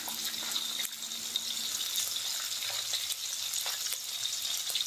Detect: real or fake real